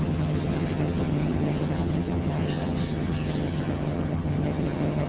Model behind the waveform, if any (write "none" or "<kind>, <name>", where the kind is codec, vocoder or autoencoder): vocoder, HiFi-GAN